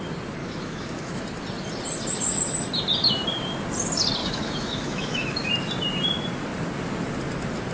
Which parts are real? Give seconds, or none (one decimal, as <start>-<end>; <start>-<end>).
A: 0.0-0.4; 1.2-4.2; 5.5-7.7